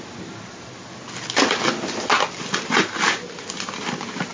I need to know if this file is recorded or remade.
recorded